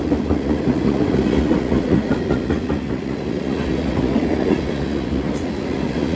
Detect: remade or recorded remade